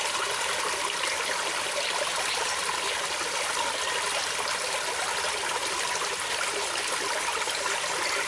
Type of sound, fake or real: real